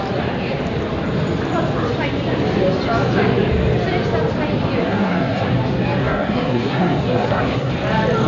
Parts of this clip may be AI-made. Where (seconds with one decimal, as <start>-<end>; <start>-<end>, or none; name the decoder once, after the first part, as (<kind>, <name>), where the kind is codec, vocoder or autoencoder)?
4.8-5.5 (codec, SNAC); 6.0-7.7